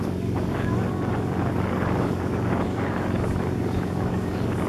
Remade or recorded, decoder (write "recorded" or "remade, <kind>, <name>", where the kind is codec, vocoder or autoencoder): remade, codec, DAC